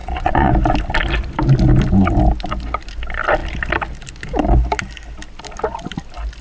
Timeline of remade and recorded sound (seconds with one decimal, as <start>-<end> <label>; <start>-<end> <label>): 0.0-0.5 remade; 0.5-6.4 recorded

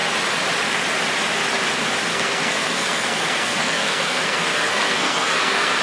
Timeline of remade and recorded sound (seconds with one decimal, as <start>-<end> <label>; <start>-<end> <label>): 0.0-2.1 recorded; 2.1-5.8 remade

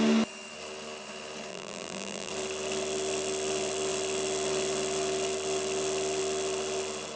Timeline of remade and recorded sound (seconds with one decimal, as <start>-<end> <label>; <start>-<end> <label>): 0.0-1.5 recorded; 1.5-2.3 remade; 2.3-7.2 recorded

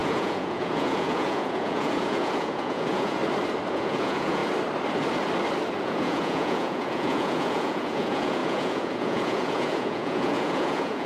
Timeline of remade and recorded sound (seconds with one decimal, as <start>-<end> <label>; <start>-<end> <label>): 0.0-3.2 remade; 3.2-3.7 recorded; 3.7-4.4 remade; 4.4-5.8 recorded; 5.8-11.1 remade

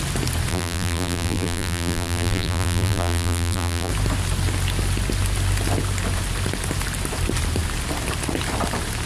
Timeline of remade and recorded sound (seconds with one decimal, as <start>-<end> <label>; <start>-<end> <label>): 0.0-0.5 recorded; 0.5-3.9 remade; 3.9-9.1 recorded